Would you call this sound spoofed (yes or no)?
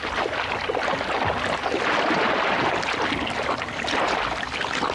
no